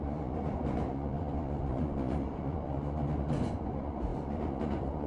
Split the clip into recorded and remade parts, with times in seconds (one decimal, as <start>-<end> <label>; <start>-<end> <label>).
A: 0.0-5.1 remade